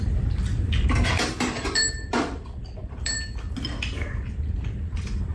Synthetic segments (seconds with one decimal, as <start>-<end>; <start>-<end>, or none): 0.0-5.3